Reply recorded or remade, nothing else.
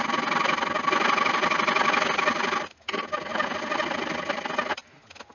recorded